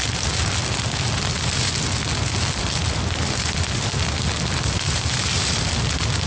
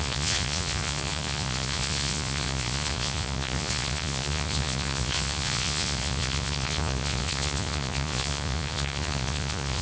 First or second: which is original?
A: first